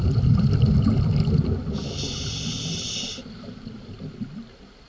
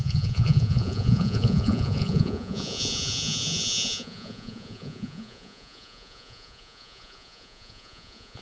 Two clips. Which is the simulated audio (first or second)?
second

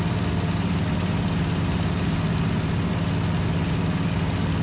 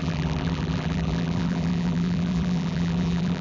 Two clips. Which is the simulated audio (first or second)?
second